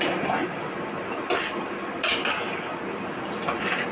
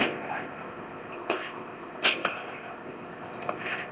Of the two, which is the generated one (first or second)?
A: second